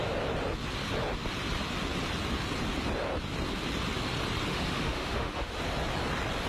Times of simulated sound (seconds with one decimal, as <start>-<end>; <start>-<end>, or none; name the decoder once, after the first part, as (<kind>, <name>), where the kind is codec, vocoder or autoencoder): 4.5-5.6 (autoencoder, DAC-VAE)